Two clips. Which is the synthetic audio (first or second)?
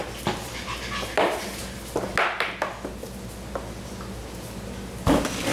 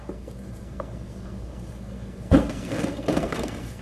second